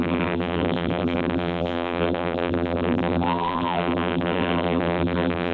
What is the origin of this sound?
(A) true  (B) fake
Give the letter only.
B